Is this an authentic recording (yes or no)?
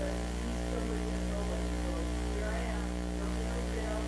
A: yes